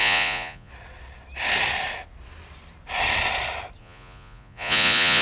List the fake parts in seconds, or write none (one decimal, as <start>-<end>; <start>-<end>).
0.0-0.7; 3.8-5.2